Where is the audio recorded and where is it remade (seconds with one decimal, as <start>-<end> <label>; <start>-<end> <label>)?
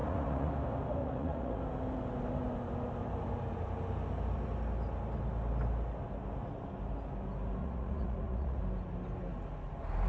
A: 0.0-0.5 remade; 0.5-1.0 recorded; 1.0-1.6 remade; 1.6-7.6 recorded; 7.6-8.6 remade; 8.6-10.1 recorded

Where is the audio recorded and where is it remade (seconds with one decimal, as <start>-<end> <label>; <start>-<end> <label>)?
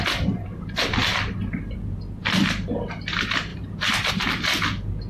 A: 0.0-5.1 recorded